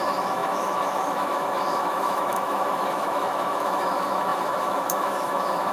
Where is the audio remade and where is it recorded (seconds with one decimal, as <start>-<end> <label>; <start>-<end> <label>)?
0.0-5.7 remade